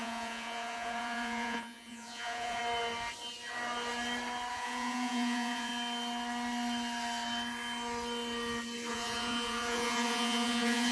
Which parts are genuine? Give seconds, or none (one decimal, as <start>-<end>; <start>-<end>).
2.6-4.5; 5.7-8.9